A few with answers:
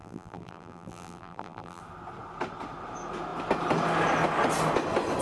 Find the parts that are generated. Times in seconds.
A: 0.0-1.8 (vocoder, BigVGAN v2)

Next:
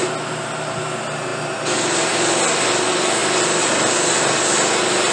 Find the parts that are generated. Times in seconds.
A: 3.2-3.9 (vocoder, BigVGAN v2)

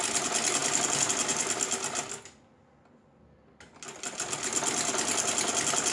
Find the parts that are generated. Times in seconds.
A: none